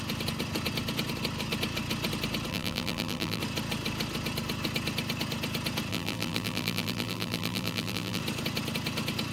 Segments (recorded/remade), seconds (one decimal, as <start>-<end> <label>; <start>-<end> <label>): 0.0-2.5 recorded; 2.5-3.4 remade; 3.4-5.9 recorded; 5.9-8.2 remade; 8.2-9.3 recorded